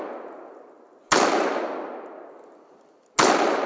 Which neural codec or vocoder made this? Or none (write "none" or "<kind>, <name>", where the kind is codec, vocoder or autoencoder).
none